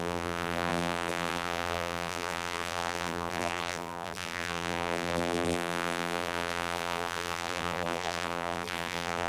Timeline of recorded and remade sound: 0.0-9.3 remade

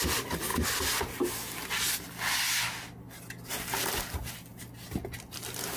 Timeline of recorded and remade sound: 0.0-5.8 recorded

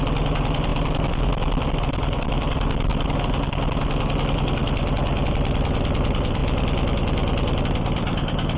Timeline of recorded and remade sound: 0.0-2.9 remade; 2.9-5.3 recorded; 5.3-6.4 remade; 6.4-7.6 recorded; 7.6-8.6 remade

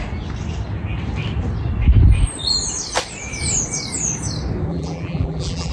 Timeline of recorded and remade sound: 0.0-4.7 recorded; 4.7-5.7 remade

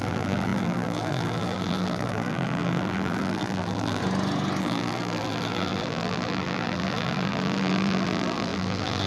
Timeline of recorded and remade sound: 0.0-4.0 remade; 4.0-4.6 recorded; 4.6-9.1 remade

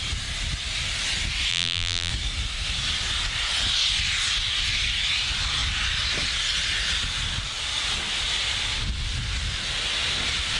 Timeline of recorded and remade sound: 0.0-1.5 recorded; 1.5-2.1 remade; 2.1-10.6 recorded

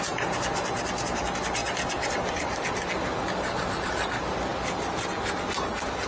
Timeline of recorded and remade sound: 0.0-6.1 recorded